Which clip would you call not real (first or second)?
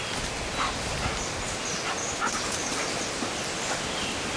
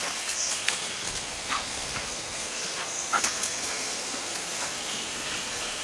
second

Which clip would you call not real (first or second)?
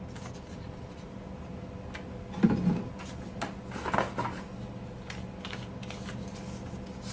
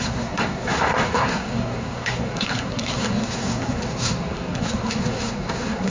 second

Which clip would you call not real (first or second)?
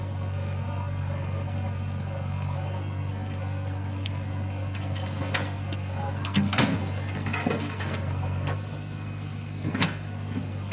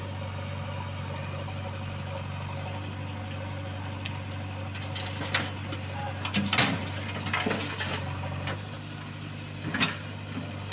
first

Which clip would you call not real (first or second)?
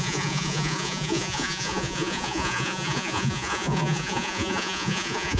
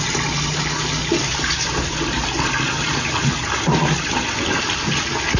first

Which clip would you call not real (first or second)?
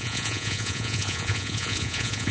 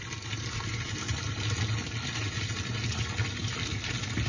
first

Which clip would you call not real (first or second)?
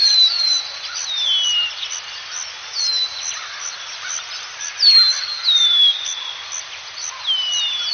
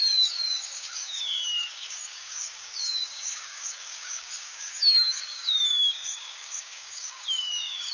second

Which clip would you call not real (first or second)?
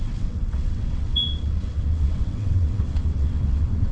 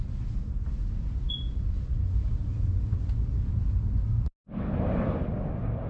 first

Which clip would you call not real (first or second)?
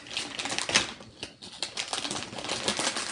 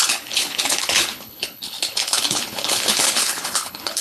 second